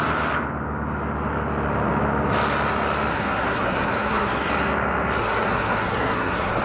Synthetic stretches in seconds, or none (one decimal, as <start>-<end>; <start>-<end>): 3.1-4.5; 5.2-6.6